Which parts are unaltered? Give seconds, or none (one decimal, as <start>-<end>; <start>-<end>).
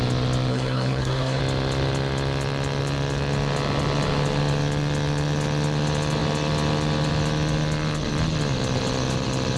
0.0-0.5; 1.4-9.6